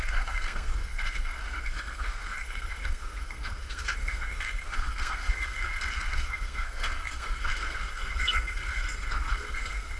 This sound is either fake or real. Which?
fake